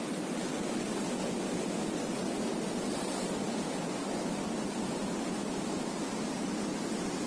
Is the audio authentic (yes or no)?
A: yes